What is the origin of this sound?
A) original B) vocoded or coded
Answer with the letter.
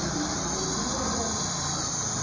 A